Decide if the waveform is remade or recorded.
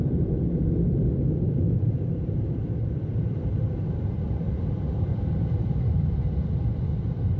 remade